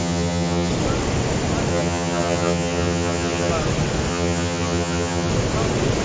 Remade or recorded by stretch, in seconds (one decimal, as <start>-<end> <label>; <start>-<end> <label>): 0.0-0.7 remade; 0.7-1.7 recorded; 1.7-3.5 remade; 3.5-4.1 recorded; 4.1-5.3 remade; 5.3-6.0 recorded